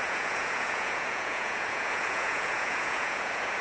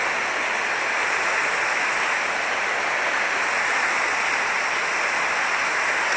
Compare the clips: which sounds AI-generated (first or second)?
first